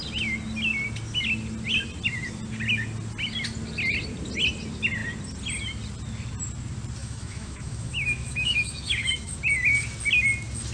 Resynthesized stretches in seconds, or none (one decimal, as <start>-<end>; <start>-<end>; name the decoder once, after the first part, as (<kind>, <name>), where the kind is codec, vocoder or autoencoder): 7.0-9.4 (autoencoder, DAC-VAE)